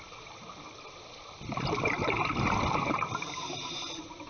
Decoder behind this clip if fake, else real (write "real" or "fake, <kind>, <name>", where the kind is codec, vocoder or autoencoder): real